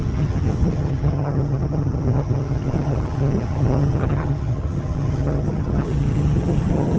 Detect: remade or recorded remade